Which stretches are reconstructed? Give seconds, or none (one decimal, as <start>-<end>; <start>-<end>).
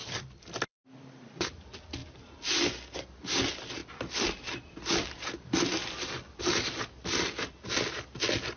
0.0-1.5; 3.8-6.4